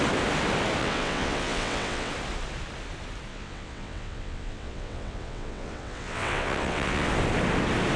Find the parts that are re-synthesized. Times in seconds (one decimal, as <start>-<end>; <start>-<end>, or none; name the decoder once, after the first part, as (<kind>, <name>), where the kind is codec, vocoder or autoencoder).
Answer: 0.8-2.1 (vocoder, WaveNeXt); 3.3-7.1